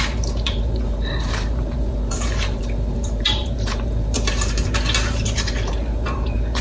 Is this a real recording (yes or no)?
no